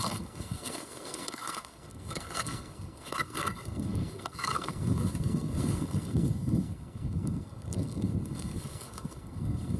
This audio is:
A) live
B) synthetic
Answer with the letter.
B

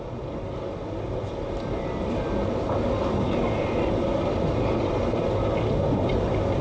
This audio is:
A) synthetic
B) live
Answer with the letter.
B